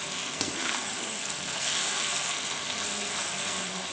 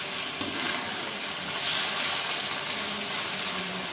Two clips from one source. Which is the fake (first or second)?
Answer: first